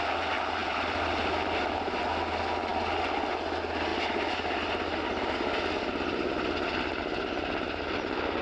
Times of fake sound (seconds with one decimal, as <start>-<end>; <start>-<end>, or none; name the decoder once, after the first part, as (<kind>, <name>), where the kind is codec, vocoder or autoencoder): none